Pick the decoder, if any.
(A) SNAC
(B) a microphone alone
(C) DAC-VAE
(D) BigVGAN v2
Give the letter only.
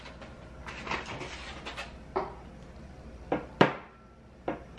B